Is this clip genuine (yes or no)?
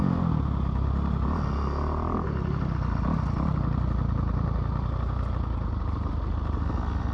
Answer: yes